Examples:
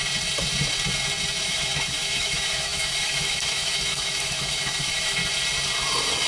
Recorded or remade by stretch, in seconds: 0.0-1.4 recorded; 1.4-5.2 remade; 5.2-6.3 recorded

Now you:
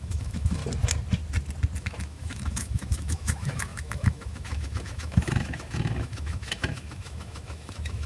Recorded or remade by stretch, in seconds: 0.0-0.6 remade; 0.6-1.8 recorded; 1.8-8.1 remade

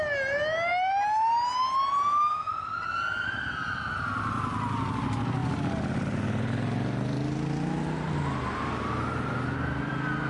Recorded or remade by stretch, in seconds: 0.0-10.3 recorded

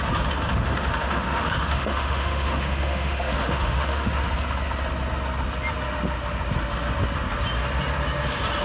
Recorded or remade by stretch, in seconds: 0.0-0.5 recorded; 0.5-4.3 remade; 4.3-8.6 recorded

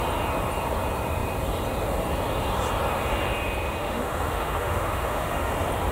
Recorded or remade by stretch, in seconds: 0.0-3.8 recorded; 3.8-5.5 remade; 5.5-5.9 recorded

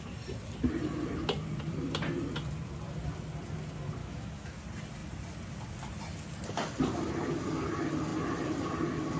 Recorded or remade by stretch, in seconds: 0.0-4.0 recorded; 4.0-4.6 remade; 4.6-9.2 recorded

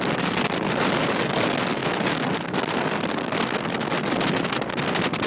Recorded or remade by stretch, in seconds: 0.0-5.3 recorded

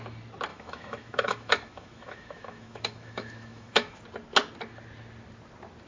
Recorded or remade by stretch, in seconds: 0.0-0.5 recorded; 0.5-4.0 remade; 4.0-5.9 recorded